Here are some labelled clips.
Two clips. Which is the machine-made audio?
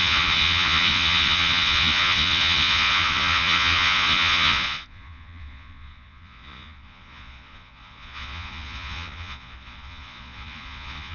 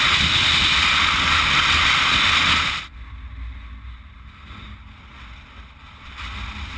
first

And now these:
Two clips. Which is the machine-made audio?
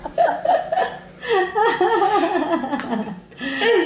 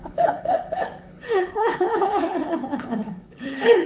second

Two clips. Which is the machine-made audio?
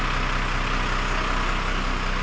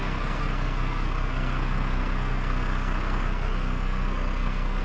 second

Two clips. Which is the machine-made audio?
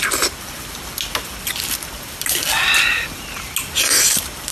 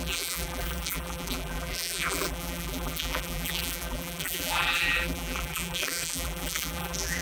second